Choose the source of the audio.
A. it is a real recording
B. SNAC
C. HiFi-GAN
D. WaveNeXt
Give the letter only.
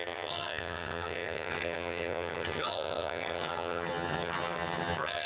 C